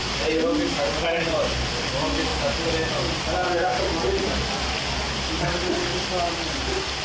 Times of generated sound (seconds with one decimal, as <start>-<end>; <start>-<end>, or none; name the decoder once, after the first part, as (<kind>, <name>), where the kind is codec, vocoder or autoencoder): none